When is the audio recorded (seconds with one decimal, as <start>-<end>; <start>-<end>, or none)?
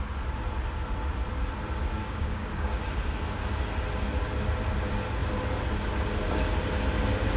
0.0-2.0; 2.8-7.4